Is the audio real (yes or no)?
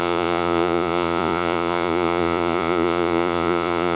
no